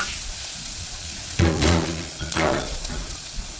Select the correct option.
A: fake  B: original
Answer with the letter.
A